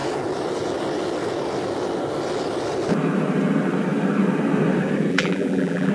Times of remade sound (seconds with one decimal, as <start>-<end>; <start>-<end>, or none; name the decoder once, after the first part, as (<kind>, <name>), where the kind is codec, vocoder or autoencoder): 5.1-5.9 (vocoder, BigVGAN v2)